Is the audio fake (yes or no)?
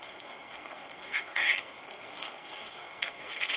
yes